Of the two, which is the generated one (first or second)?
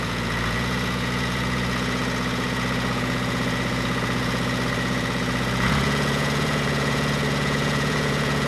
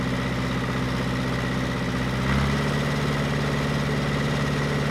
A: first